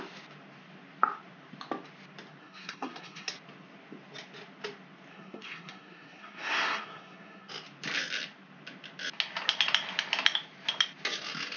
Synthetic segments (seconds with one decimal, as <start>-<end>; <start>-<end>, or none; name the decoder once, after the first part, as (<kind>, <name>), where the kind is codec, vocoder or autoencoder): 2.4-3.3 (codec, SNAC); 5.1-7.5